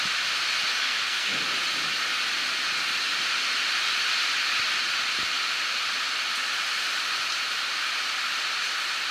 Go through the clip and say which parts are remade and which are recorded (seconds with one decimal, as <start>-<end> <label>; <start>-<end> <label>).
0.0-0.7 recorded; 0.7-1.4 remade; 1.4-9.1 recorded